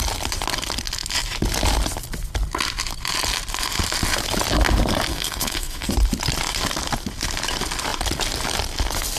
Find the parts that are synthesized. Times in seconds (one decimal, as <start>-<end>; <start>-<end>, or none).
5.1-5.9